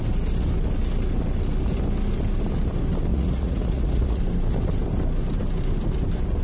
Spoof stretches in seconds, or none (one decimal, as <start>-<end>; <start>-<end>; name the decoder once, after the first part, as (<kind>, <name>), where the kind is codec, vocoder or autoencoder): 3.1-4.2 (vocoder, Vocos)